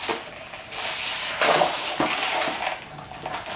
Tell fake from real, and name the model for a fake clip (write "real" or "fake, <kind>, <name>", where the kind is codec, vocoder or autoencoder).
real